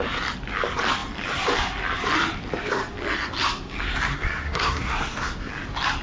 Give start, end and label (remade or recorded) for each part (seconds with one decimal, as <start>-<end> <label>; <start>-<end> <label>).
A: 0.0-4.1 recorded; 4.1-5.5 remade; 5.5-6.0 recorded